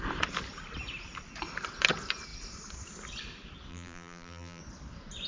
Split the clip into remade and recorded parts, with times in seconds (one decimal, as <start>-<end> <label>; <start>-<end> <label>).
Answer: 0.0-3.7 recorded; 3.7-4.6 remade; 4.6-5.3 recorded